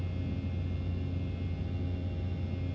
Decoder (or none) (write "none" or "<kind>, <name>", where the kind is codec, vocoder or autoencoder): none